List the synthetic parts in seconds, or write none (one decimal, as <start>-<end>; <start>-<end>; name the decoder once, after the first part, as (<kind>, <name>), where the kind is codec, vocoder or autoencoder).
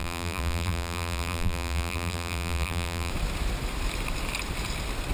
0.0-3.1 (vocoder, BigVGAN v2)